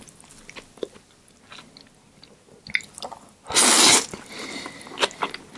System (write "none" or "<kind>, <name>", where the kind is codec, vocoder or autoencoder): none